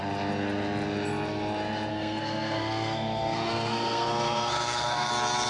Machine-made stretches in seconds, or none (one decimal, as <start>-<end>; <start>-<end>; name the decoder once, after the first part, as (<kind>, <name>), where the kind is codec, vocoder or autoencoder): 1.9-5.1 (codec, SNAC)